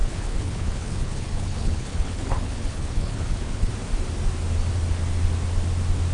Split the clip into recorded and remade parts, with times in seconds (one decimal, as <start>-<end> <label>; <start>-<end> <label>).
0.0-3.7 remade; 3.7-6.1 recorded

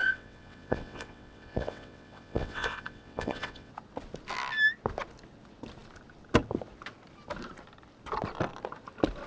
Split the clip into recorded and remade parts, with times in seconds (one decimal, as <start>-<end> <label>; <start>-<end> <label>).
0.0-3.7 remade; 3.7-9.3 recorded

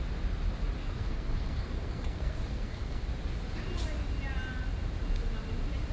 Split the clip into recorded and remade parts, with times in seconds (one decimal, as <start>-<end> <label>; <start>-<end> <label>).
0.0-0.8 recorded; 0.8-3.0 remade; 3.0-5.9 recorded

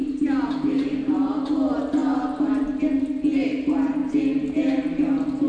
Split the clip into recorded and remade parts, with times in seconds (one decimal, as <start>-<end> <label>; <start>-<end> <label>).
0.0-5.5 recorded

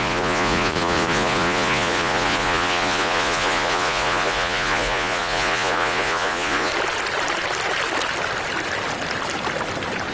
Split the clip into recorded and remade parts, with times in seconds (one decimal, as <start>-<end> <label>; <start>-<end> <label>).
0.0-6.7 remade; 6.7-10.1 recorded